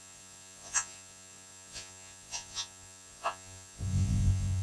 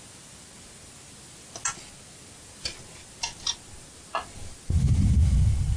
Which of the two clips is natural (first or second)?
second